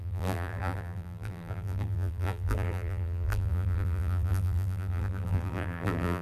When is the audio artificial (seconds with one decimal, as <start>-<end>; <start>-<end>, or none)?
0.0-6.2